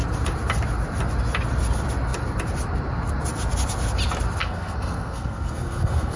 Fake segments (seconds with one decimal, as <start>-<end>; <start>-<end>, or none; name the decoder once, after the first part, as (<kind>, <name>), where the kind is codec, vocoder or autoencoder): 4.4-6.2 (codec, SNAC)